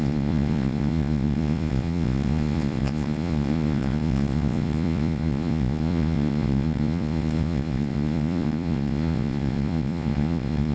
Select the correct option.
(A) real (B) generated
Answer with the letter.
B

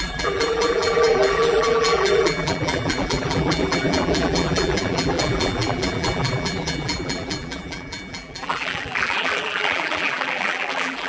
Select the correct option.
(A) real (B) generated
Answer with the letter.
B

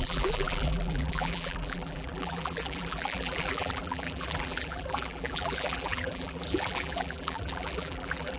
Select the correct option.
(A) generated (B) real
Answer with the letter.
A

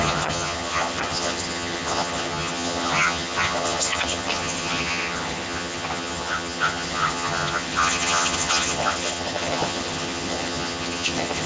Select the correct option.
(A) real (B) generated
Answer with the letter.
B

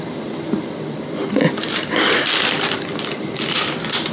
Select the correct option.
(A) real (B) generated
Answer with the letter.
A